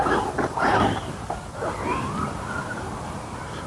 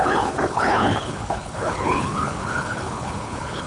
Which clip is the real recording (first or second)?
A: first